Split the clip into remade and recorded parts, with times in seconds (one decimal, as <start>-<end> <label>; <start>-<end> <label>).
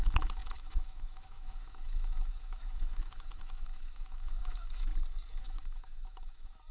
0.0-4.9 remade; 4.9-5.4 recorded; 5.4-6.7 remade